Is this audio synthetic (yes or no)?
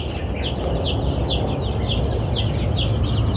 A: no